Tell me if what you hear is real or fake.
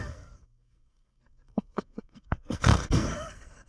fake